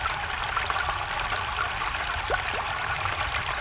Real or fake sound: real